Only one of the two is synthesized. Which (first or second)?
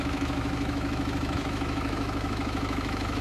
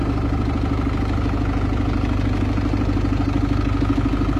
first